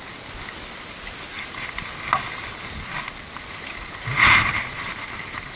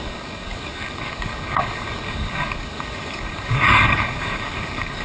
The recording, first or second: first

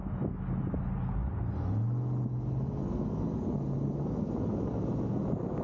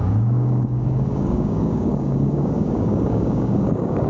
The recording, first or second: first